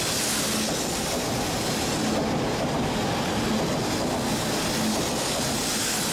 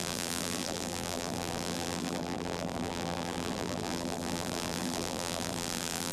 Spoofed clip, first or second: second